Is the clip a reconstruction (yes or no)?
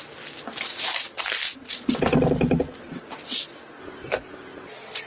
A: no